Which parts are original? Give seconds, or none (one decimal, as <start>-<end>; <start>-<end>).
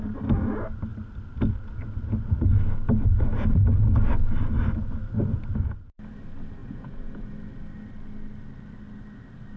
0.0-6.6; 7.3-9.6